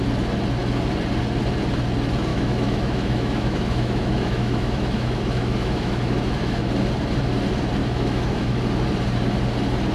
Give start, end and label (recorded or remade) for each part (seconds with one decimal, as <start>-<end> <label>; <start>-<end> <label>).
0.0-2.3 recorded; 2.3-6.7 remade; 6.7-7.8 recorded; 7.8-8.6 remade; 8.6-9.9 recorded